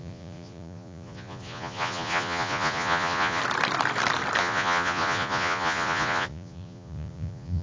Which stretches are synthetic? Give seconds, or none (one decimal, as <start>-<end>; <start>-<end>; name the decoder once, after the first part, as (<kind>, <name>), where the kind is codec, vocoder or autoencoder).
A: 0.0-3.4 (vocoder, Vocos); 4.4-7.6